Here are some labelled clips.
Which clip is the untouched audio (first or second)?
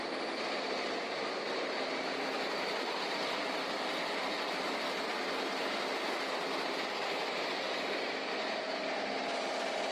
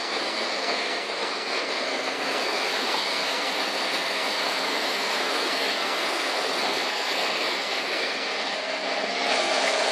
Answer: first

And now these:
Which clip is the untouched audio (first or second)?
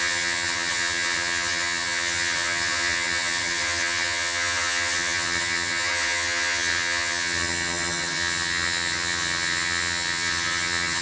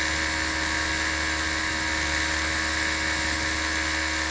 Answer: second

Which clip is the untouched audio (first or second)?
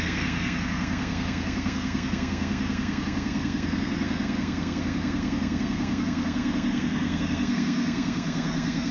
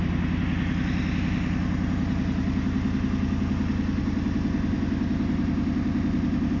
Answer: second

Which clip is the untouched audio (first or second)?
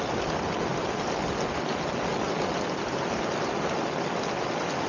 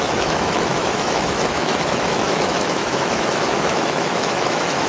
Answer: first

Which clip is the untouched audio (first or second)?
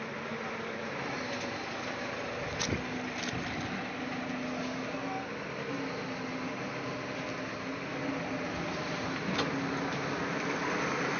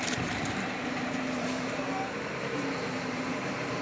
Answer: first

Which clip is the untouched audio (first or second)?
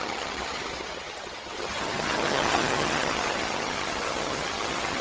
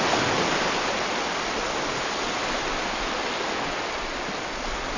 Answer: second